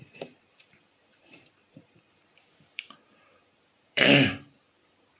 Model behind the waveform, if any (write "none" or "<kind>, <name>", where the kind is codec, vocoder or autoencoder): vocoder, BigVGAN v2